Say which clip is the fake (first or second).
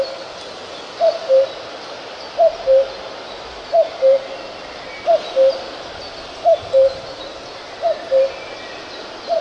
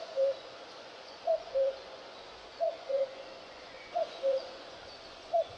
second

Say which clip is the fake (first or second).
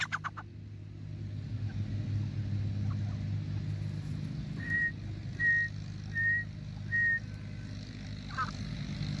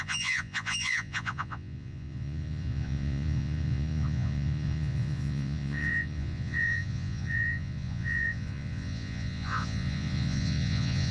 second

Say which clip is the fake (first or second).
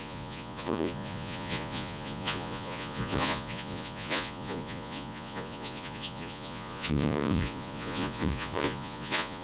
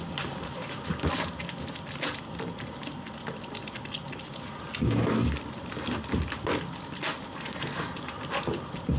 first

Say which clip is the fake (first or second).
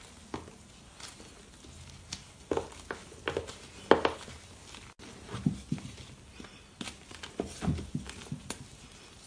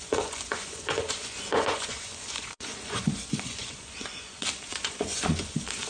second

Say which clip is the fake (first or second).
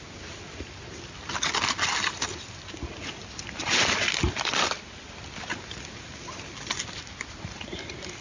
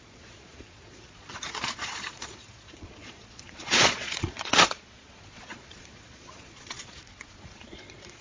second